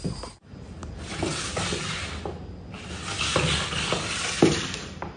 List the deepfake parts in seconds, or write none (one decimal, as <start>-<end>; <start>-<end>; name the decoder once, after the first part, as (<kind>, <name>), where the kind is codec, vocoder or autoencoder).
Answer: none